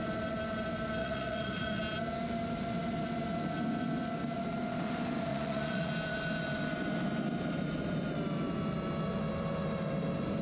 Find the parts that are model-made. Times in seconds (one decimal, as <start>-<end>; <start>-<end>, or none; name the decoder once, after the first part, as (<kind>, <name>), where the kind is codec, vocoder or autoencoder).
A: 1.0-1.8 (vocoder, Vocos); 5.3-5.9